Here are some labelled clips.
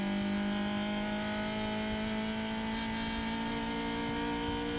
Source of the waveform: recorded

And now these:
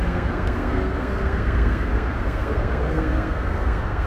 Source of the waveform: remade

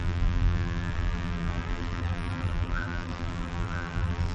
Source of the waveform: remade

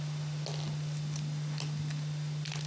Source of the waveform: recorded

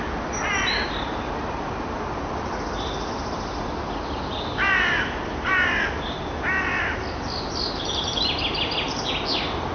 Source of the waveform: recorded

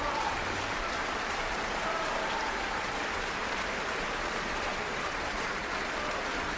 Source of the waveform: remade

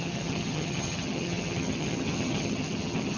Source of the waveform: remade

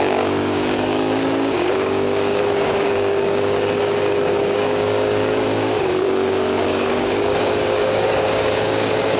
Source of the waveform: remade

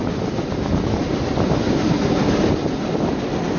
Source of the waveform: recorded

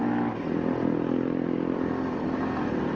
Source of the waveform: recorded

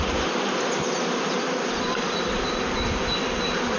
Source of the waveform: recorded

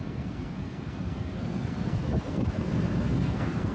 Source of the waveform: remade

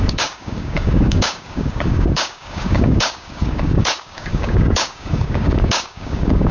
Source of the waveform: remade